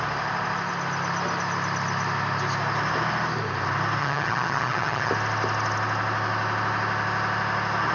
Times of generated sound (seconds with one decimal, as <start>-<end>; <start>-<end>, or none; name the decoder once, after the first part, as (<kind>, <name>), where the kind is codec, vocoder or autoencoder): 4.0-5.1 (vocoder, HiFi-GAN)